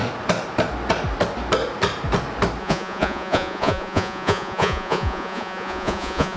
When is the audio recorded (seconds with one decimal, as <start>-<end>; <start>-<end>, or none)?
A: 0.0-2.6

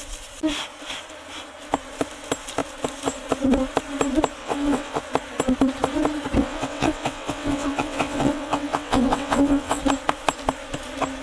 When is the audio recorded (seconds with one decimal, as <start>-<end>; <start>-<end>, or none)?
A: 0.0-4.4; 5.0-6.4; 9.8-11.2

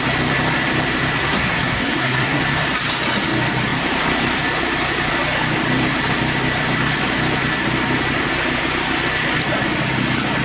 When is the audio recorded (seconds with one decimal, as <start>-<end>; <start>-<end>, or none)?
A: 0.0-1.2; 2.4-10.4

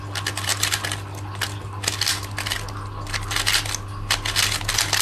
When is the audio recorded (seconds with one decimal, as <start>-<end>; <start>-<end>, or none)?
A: 0.0-5.0

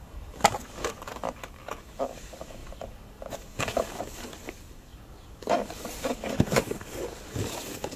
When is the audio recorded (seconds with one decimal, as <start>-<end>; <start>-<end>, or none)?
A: none

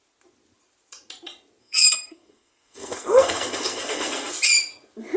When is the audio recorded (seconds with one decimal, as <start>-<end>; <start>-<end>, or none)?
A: 0.0-1.6; 4.3-5.2